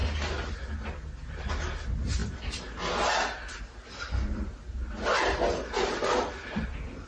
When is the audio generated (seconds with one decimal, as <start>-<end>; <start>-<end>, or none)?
none